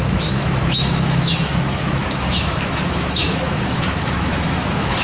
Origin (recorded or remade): remade